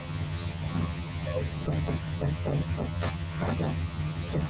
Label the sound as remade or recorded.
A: remade